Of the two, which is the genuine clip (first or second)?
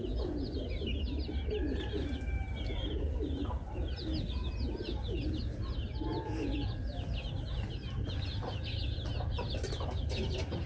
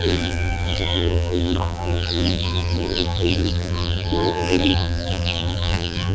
first